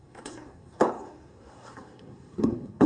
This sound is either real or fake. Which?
fake